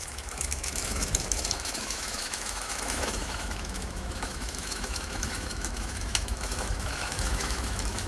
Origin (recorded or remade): remade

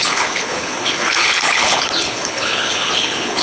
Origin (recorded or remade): remade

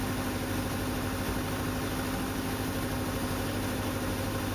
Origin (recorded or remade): recorded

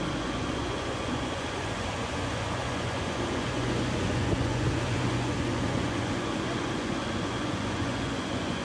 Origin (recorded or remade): remade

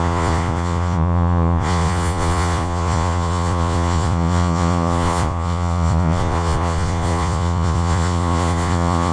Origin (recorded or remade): remade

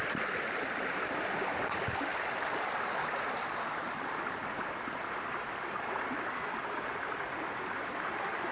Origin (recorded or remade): recorded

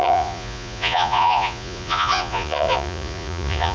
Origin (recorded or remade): remade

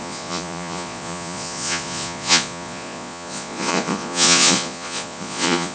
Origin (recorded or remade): remade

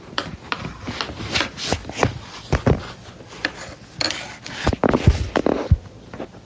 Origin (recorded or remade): recorded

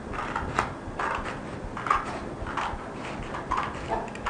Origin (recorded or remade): recorded